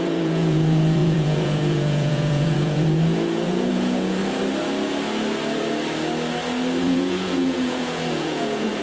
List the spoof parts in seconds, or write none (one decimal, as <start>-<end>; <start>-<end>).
0.0-4.2; 6.8-8.8